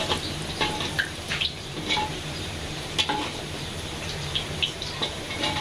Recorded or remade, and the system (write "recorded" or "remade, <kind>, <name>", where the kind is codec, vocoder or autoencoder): remade, vocoder, BigVGAN v2